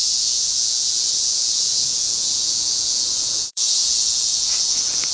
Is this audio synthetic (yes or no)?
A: yes